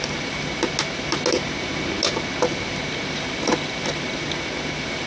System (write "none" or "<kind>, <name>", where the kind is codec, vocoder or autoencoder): none